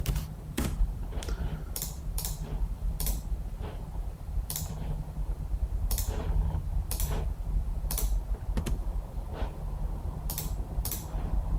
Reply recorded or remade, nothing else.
remade